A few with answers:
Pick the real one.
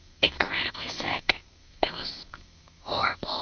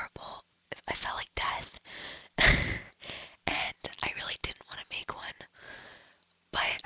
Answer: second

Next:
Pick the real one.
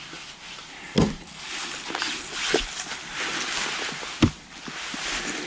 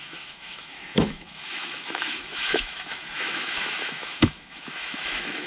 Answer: first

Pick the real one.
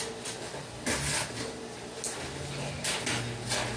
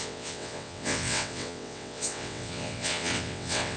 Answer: first